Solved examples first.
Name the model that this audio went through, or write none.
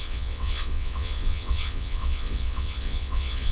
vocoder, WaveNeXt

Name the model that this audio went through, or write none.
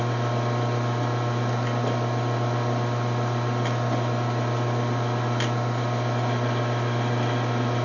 none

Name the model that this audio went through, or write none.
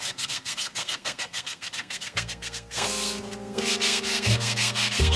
codec, SNAC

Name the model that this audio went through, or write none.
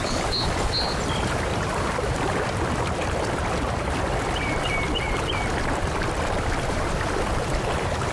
vocoder, BigVGAN v2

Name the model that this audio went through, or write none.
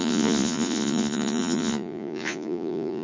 vocoder, Vocos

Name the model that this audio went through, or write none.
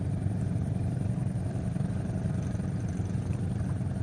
vocoder, BigVGAN v2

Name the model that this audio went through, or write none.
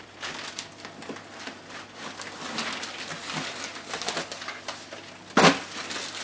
none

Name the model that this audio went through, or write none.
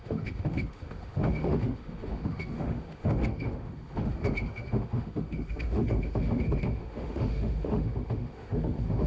autoencoder, DAC-VAE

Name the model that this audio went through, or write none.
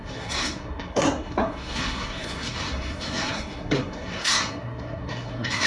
codec, SNAC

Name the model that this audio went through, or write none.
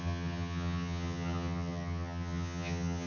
vocoder, HiFi-GAN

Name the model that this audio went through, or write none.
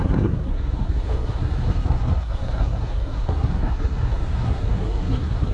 codec, SNAC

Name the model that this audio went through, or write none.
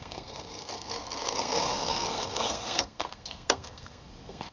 codec, SNAC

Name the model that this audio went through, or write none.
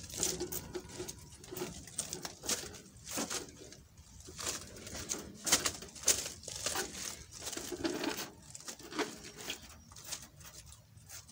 none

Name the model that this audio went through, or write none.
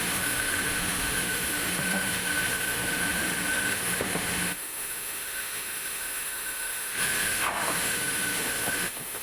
autoencoder, DAC-VAE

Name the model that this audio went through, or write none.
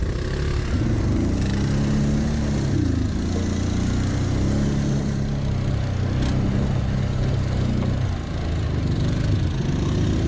none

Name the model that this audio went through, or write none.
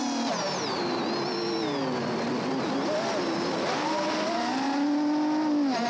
none